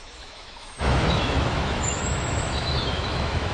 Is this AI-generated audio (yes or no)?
yes